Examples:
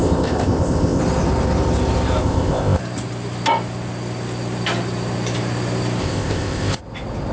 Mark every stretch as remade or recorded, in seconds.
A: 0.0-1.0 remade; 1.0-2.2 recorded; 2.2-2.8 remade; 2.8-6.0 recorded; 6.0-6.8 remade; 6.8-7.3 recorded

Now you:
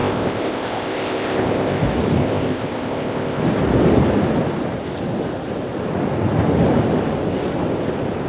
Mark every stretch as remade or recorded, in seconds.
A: 0.0-1.8 remade; 1.8-2.2 recorded; 2.2-3.4 remade; 3.4-8.3 recorded